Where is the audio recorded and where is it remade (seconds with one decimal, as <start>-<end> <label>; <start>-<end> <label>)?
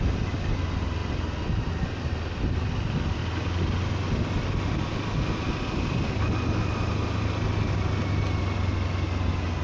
0.0-9.6 recorded